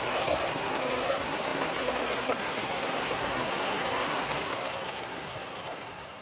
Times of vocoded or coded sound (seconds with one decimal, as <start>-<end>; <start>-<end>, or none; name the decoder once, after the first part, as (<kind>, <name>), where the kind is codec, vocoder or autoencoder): 0.0-6.2 (codec, SNAC)